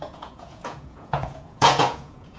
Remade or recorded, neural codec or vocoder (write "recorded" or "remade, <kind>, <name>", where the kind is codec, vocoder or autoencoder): remade, vocoder, Vocos